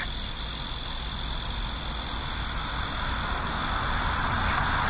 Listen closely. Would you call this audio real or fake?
real